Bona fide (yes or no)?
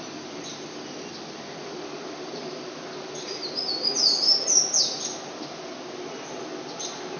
yes